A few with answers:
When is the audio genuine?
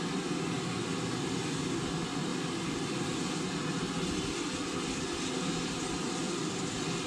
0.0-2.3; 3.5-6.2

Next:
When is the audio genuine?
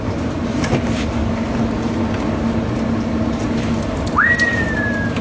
1.2-4.3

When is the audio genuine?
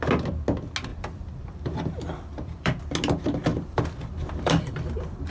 0.0-0.9; 2.8-3.5